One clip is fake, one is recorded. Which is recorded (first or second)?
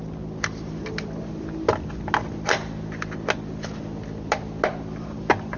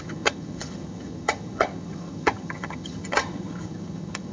first